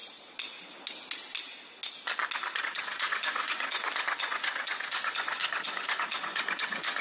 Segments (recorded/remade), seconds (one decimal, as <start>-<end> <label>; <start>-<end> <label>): 0.0-2.6 recorded; 2.6-7.0 remade